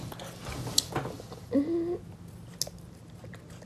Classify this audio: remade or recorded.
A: recorded